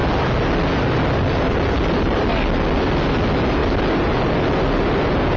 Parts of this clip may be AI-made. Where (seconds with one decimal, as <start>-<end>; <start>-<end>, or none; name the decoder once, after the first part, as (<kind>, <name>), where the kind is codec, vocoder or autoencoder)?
none